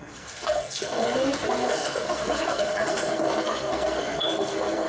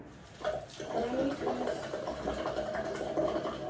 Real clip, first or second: second